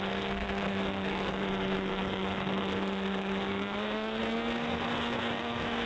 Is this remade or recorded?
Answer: remade